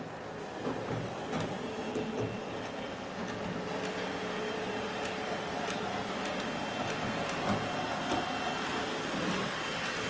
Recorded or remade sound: recorded